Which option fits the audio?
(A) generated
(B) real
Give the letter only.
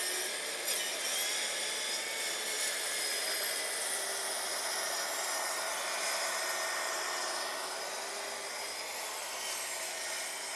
B